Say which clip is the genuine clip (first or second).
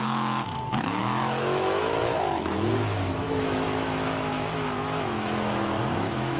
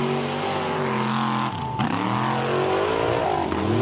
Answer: second